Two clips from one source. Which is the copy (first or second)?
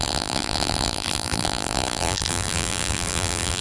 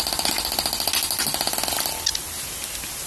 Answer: first